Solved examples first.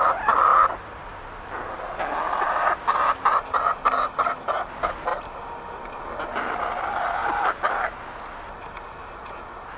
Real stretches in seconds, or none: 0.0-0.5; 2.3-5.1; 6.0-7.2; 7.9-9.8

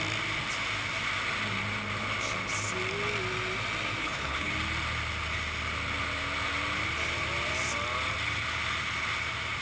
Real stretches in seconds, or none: 0.0-4.0; 4.5-9.6

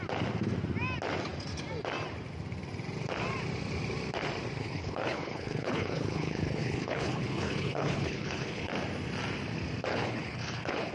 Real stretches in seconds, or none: 0.0-4.6; 8.7-9.9

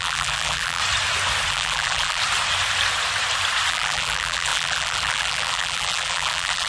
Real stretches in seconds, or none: 0.8-1.5; 2.2-3.7

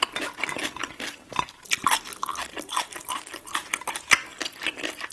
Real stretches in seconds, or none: 0.0-5.1

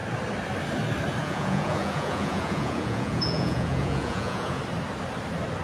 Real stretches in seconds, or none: 0.0-1.2; 4.6-5.6

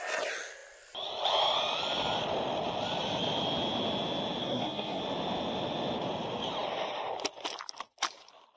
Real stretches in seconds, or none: 0.0-4.4; 5.0-8.6